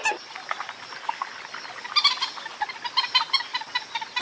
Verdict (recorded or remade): recorded